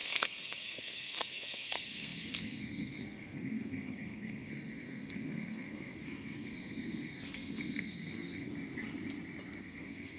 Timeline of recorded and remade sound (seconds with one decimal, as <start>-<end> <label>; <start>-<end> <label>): 0.0-8.5 remade; 8.5-9.6 recorded; 9.6-10.2 remade